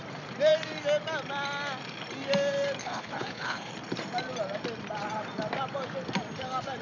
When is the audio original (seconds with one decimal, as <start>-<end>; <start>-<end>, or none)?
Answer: 0.0-2.8; 3.7-6.8